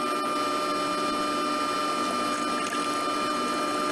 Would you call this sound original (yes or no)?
yes